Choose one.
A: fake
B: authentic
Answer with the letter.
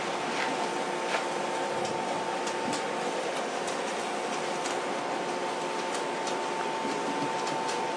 B